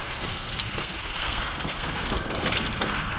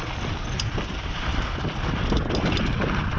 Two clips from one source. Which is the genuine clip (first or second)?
second